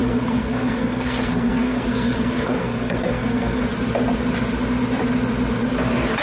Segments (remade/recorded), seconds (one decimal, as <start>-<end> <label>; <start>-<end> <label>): 0.0-3.6 remade; 3.6-6.2 recorded